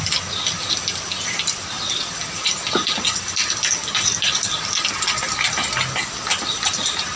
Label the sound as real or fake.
real